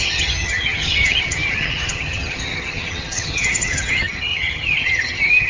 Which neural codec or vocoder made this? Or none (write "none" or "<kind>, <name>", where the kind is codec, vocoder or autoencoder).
vocoder, HiFi-GAN